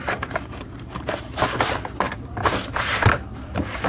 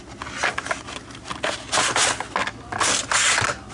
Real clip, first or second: second